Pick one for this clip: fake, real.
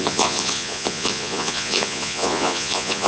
fake